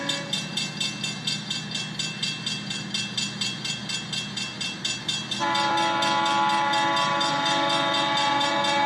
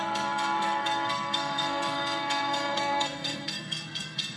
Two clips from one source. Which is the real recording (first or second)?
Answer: first